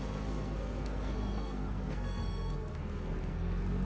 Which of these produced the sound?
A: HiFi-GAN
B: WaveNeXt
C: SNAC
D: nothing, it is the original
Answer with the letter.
C